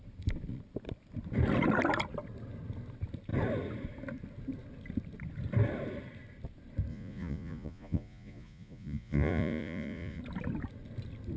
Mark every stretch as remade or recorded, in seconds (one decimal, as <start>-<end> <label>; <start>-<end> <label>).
0.0-6.9 recorded; 6.9-10.2 remade; 10.2-11.4 recorded